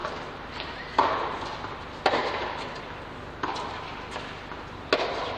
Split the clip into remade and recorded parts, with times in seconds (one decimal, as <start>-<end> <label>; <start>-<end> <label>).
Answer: 0.0-5.4 recorded